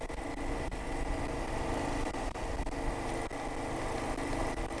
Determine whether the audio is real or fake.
real